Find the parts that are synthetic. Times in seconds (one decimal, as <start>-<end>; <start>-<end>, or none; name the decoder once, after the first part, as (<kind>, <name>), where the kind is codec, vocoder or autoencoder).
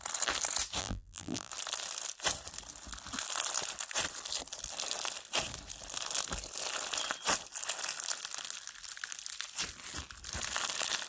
0.8-1.5 (vocoder, BigVGAN v2)